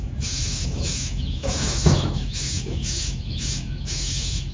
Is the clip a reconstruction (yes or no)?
yes